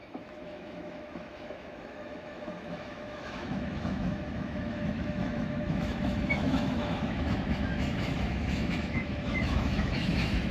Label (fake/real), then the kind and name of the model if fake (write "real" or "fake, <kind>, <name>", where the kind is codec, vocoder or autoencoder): fake, autoencoder, DAC-VAE